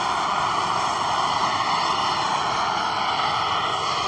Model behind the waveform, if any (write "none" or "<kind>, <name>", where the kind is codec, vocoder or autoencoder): none